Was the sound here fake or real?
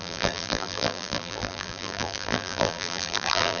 fake